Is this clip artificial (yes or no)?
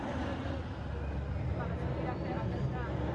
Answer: no